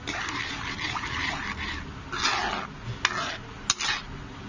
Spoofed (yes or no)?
no